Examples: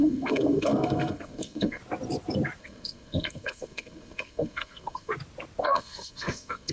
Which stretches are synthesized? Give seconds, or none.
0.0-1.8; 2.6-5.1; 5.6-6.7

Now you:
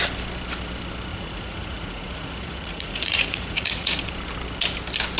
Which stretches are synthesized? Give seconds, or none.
1.1-4.0

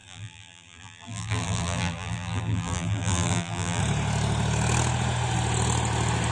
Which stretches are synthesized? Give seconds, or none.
0.0-3.8

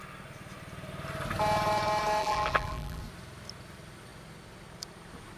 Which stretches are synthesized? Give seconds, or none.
2.2-3.0

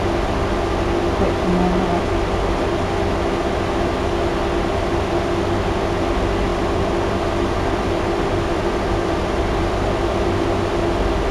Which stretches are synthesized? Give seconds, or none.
6.5-10.8